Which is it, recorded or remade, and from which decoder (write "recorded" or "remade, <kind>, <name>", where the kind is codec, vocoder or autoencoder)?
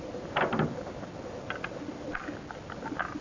recorded